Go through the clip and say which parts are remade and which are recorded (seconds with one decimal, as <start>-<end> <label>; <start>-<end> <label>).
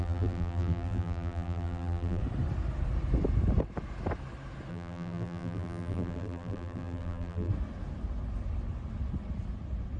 0.0-2.2 remade; 2.2-4.7 recorded; 4.7-7.5 remade; 7.5-10.0 recorded